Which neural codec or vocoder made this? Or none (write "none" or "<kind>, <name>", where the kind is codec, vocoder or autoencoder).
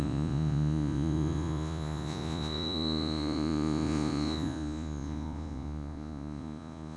vocoder, Vocos